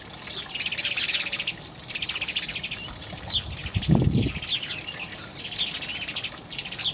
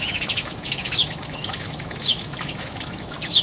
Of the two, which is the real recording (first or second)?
first